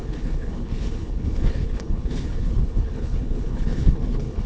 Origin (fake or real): fake